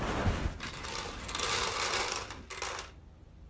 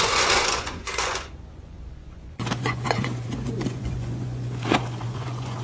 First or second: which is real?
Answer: first